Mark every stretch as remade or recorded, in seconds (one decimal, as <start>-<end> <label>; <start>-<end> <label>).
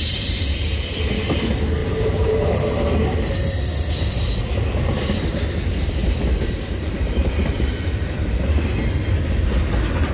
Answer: 0.0-1.8 recorded; 1.8-3.0 remade; 3.0-6.0 recorded; 6.0-8.9 remade; 8.9-10.1 recorded